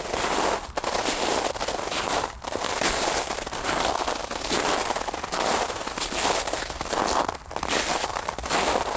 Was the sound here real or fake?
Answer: real